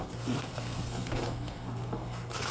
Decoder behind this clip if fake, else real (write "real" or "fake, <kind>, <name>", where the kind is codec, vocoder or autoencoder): fake, codec, SNAC